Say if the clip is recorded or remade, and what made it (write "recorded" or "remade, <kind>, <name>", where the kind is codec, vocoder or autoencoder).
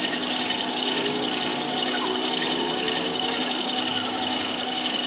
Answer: remade, codec, DAC